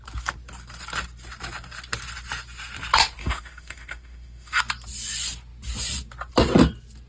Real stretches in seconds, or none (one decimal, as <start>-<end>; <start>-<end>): 0.0-3.2; 4.6-7.1